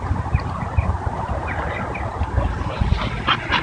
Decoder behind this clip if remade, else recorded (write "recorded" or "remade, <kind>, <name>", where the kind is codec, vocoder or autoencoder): recorded